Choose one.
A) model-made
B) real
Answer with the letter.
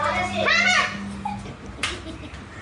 B